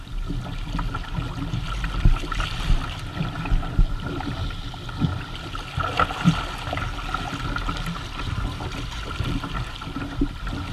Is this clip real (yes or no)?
yes